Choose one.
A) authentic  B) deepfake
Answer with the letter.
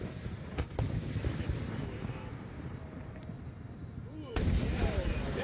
B